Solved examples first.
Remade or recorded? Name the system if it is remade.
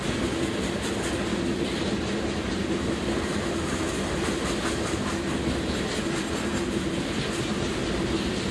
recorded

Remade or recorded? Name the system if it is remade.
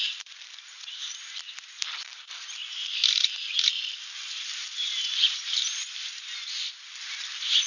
remade, vocoder, BigVGAN v2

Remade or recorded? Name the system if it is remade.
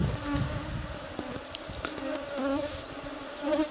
recorded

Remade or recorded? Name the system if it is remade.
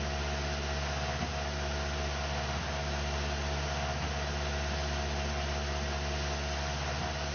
recorded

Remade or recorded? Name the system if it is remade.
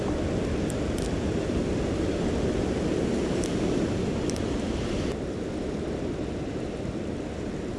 recorded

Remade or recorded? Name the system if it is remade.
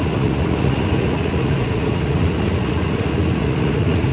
remade, vocoder, Vocos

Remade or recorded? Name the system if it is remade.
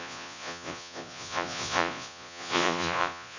remade, vocoder, Vocos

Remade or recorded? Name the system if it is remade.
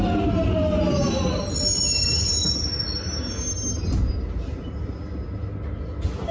recorded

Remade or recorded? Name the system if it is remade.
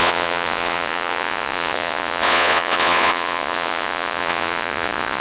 remade, vocoder, Vocos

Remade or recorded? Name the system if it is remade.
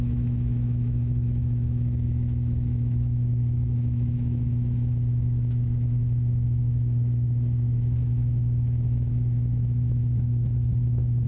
remade, autoencoder, DAC-VAE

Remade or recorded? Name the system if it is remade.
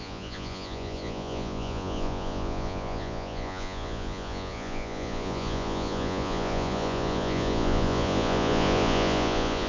remade, vocoder, Vocos